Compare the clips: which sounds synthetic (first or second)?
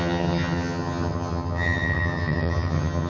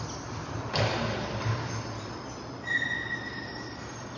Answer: first